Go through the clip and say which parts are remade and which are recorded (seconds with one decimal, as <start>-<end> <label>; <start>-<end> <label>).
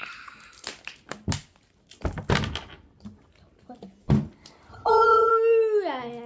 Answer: 0.0-4.7 recorded; 4.7-5.3 remade; 5.3-6.3 recorded